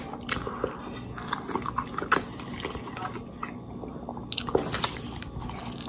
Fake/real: real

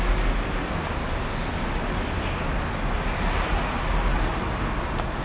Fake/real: real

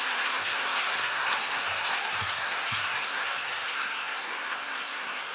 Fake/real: fake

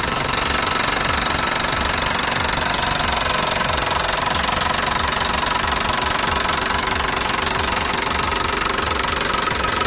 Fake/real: real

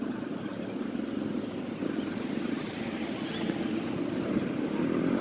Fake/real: real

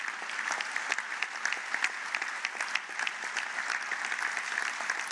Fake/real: real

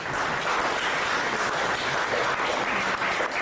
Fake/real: real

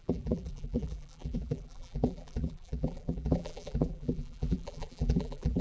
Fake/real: fake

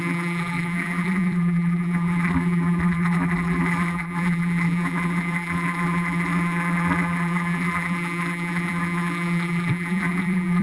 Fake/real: fake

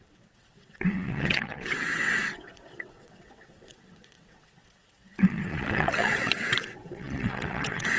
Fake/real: fake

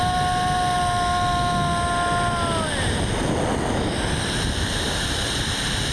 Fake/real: real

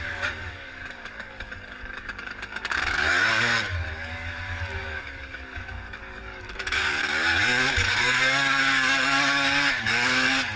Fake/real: fake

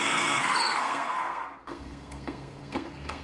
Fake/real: fake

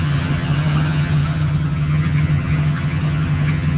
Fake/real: fake